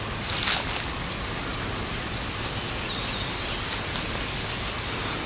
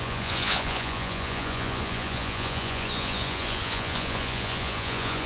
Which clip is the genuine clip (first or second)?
first